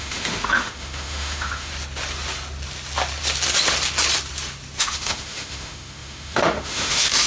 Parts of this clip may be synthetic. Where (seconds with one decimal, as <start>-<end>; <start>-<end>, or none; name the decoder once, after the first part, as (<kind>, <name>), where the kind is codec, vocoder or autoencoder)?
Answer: 0.0-1.7 (autoencoder, DAC-VAE); 4.8-7.3